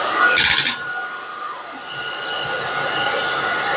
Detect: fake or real real